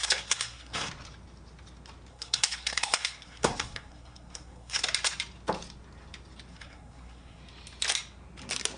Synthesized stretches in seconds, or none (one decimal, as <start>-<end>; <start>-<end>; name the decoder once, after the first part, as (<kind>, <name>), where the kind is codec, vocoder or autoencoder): 0.0-0.9 (codec, SNAC); 2.1-4.8; 6.5-7.4